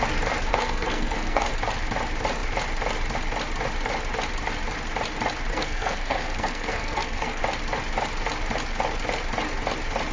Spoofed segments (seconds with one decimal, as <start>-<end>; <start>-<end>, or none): 0.5-1.5; 5.5-7.4